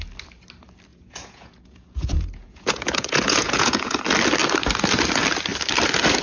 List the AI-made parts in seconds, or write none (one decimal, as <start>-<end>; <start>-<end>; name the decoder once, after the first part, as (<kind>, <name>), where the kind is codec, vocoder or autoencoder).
0.9-4.0 (vocoder, Vocos)